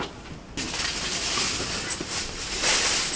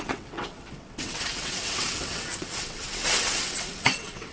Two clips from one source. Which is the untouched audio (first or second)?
first